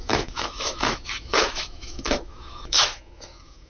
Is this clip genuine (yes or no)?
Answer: no